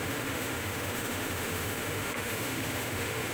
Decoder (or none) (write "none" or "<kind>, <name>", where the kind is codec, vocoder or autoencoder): autoencoder, DAC-VAE